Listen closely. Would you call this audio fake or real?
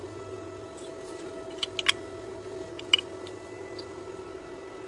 real